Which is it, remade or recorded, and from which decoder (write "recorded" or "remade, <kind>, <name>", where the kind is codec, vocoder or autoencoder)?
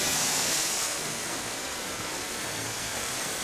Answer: remade, codec, SNAC